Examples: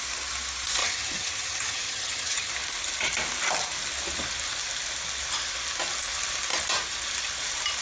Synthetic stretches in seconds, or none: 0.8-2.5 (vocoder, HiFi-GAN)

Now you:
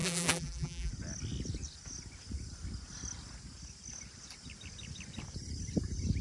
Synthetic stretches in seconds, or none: 0.0-0.9 (vocoder, BigVGAN v2)